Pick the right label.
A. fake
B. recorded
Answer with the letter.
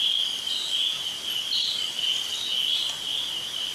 B